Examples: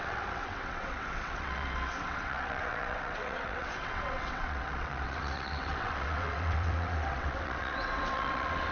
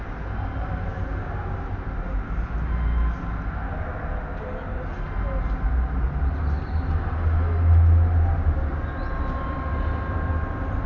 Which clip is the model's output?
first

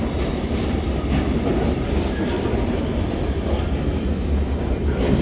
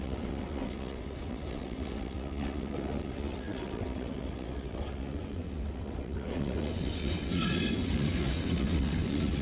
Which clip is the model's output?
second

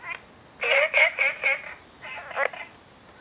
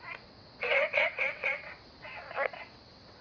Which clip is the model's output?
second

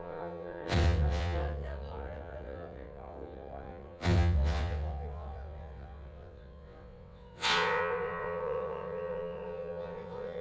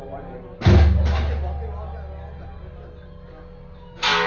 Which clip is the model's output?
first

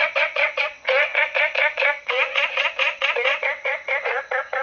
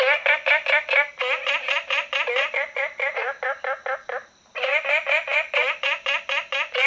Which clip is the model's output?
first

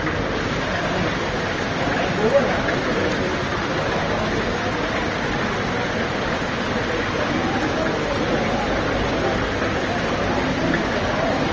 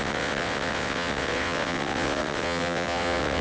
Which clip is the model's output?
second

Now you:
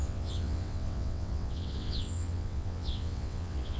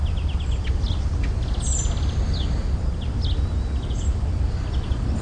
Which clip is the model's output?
first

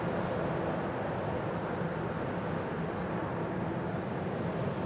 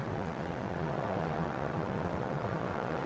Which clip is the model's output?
second